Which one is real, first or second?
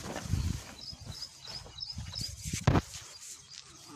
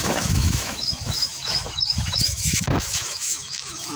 first